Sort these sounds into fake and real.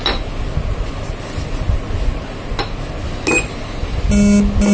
real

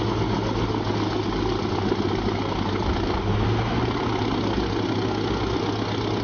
real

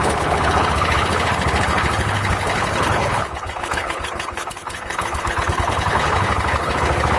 fake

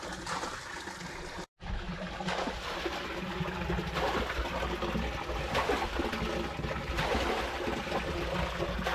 real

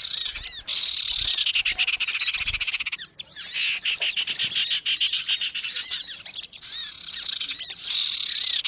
real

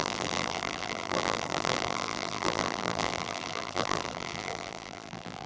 fake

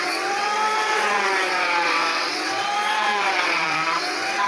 fake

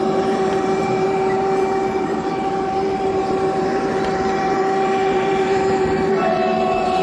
fake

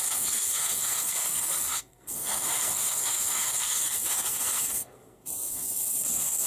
fake